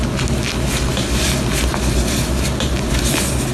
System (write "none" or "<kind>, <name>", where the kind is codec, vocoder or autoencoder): none